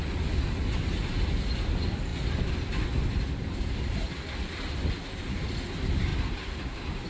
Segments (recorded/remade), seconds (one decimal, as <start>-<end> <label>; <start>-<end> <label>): 0.0-7.1 recorded